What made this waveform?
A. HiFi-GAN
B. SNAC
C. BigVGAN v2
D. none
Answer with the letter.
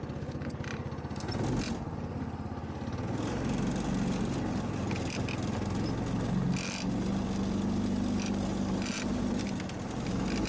D